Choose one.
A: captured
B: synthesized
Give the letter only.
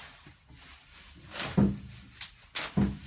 A